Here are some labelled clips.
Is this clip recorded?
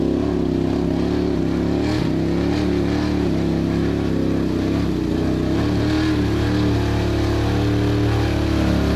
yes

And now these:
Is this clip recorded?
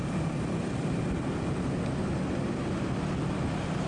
yes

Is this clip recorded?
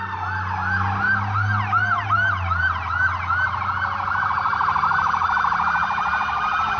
yes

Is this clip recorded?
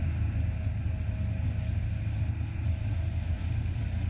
yes